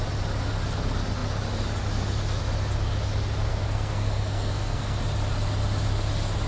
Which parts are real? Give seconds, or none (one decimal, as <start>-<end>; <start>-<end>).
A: 0.0-3.5; 5.0-6.5

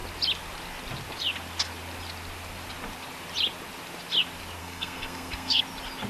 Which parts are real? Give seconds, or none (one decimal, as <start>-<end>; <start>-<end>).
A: 0.0-4.6; 5.6-6.1

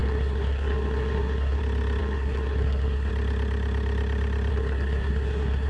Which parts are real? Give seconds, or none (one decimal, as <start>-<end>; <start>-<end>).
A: 1.6-2.0; 3.1-4.5